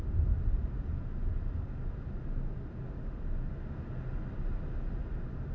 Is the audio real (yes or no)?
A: yes